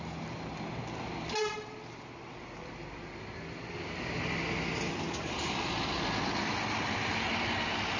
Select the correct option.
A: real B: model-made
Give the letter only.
A